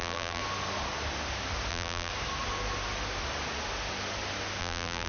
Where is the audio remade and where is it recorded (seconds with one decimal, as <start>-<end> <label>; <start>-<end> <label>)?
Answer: 0.0-0.4 remade; 0.4-1.7 recorded; 1.7-2.1 remade; 2.1-4.6 recorded; 4.6-5.1 remade